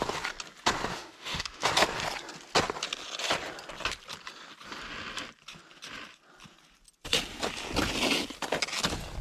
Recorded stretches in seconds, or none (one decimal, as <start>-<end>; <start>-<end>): 0.0-0.9; 1.7-9.2